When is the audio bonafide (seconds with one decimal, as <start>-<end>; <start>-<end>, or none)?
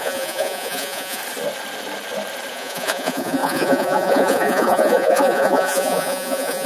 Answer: 1.2-2.5